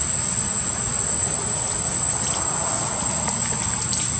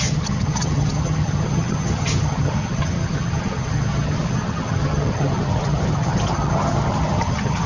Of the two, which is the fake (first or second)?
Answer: second